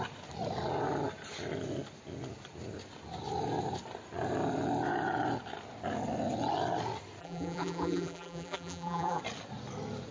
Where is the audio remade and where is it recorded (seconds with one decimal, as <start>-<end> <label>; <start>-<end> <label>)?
0.0-7.2 recorded; 7.2-9.2 remade; 9.2-10.1 recorded